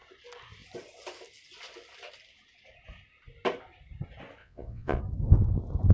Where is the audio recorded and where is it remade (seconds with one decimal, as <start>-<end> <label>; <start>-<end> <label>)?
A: 0.0-4.4 recorded; 4.4-5.0 remade; 5.0-5.9 recorded